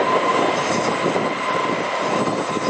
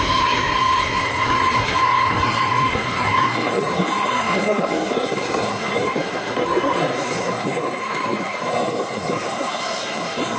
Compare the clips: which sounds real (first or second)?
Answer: first